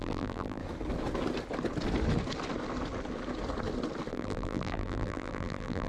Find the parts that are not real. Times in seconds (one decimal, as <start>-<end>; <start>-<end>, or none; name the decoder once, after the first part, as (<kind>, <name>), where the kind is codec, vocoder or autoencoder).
0.0-0.6 (vocoder, BigVGAN v2); 4.1-5.9